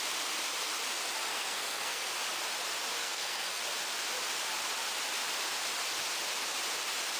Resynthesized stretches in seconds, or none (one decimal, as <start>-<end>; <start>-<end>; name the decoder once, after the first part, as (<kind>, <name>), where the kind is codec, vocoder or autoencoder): 1.3-2.1 (codec, SNAC); 3.0-3.6